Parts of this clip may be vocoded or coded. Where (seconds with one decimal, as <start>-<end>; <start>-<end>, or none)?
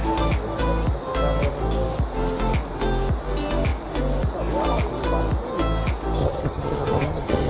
6.2-7.5